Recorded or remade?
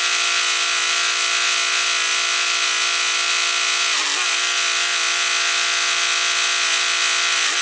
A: recorded